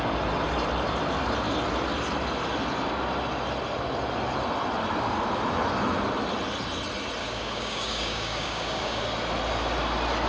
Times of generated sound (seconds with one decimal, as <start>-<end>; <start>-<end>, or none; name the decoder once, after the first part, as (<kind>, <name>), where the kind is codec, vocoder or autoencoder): 7.2-9.0 (codec, DAC)